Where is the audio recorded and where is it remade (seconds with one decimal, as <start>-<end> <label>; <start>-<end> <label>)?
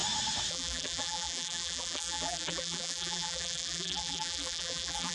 0.0-0.5 recorded; 0.5-5.1 remade